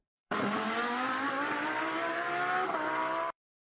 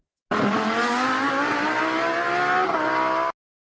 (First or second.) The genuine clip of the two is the second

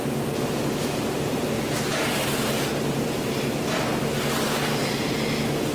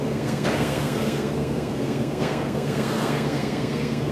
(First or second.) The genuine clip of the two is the first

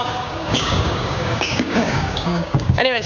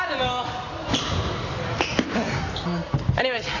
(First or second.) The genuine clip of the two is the second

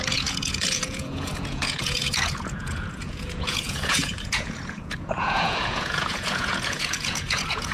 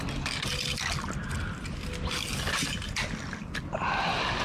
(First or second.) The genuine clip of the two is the second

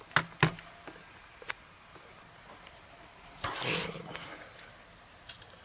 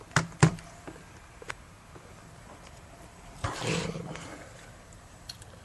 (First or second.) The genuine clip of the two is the first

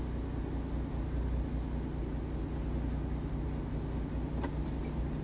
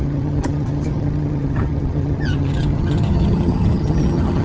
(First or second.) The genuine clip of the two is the first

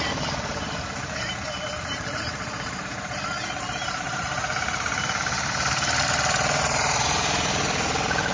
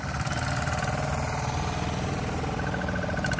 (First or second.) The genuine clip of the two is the second